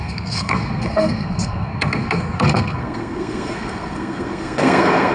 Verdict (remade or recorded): remade